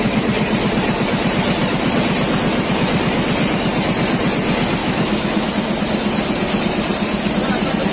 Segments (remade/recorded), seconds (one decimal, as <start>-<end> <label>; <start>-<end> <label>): 0.0-4.8 recorded; 4.8-5.5 remade; 5.5-7.9 recorded